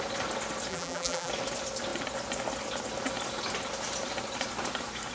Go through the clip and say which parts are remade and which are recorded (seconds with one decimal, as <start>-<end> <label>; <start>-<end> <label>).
0.0-0.7 recorded; 0.7-1.3 remade; 1.3-5.1 recorded